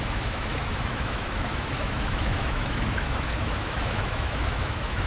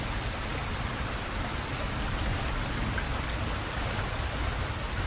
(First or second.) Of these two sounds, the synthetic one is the first